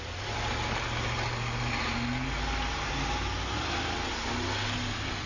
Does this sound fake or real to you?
real